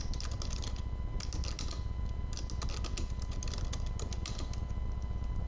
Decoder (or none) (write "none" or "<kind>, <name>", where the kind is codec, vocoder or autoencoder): none